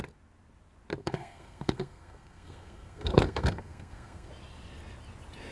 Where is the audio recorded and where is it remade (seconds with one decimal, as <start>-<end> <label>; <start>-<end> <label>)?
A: 0.0-1.0 recorded; 1.0-4.3 remade; 4.3-5.5 recorded